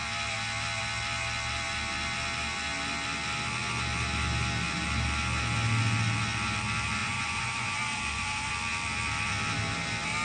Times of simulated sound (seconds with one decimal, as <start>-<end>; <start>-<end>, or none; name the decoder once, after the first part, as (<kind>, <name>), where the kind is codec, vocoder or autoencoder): 7.0-8.5 (vocoder, Vocos)